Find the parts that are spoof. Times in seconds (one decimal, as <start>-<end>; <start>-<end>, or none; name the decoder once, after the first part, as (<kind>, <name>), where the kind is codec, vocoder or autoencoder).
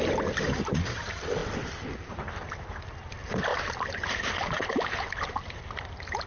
none